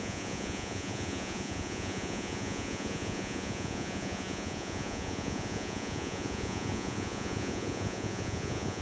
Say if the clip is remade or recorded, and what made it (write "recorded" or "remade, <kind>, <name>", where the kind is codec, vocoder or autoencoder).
remade, vocoder, Vocos